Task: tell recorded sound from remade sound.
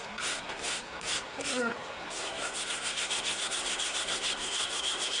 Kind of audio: remade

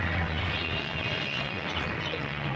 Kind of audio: remade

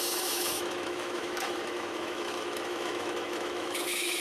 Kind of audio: remade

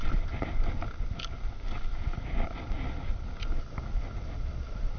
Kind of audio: recorded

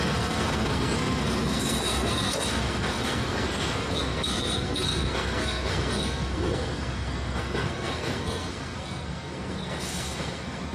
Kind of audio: remade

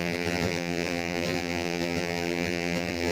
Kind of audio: remade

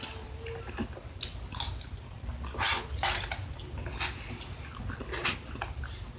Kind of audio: recorded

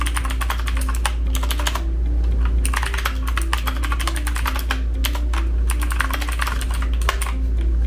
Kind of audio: recorded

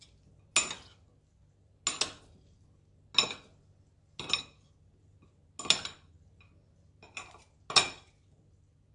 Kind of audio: recorded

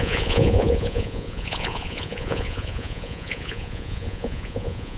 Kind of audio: remade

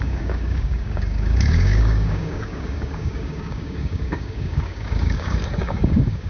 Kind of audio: remade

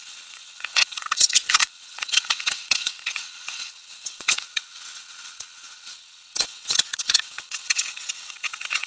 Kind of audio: remade